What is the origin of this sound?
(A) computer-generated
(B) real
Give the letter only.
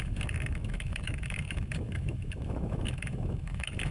A